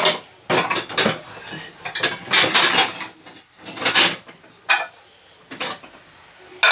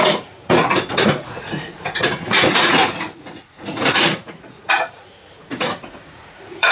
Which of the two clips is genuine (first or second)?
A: first